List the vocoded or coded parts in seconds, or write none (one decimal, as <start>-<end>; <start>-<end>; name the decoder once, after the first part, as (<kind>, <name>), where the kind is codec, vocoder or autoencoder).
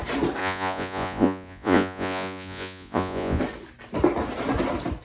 0.4-3.4 (vocoder, Vocos)